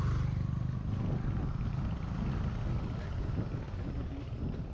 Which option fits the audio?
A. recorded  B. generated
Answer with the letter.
A